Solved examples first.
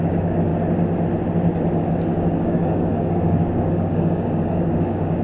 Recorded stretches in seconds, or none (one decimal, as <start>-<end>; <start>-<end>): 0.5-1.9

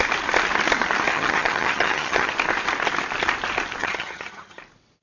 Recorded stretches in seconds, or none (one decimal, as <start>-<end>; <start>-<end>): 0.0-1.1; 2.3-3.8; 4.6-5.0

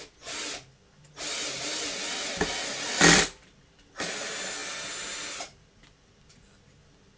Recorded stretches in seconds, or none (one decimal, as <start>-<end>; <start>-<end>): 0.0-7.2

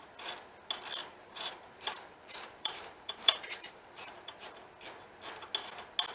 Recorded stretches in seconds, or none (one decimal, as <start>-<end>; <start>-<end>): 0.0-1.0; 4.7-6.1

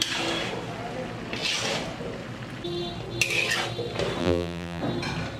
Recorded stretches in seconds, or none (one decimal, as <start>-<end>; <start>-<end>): 0.0-4.2; 4.8-5.4

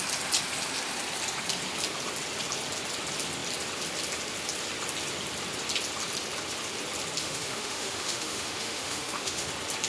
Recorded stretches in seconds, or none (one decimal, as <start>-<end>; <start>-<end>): 0.0-7.2; 9.5-9.9

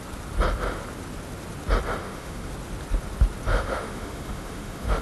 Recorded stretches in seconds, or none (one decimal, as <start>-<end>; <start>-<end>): 0.0-2.0; 2.5-3.5

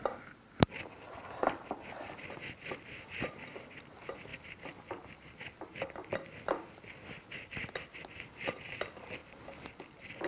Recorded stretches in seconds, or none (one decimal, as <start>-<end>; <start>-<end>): 0.0-10.3